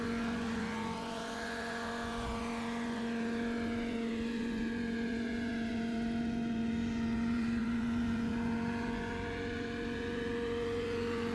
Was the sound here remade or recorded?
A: remade